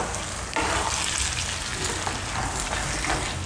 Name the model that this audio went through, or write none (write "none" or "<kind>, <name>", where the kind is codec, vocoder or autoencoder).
none